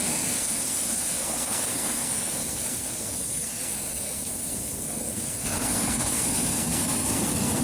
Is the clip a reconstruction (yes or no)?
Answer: yes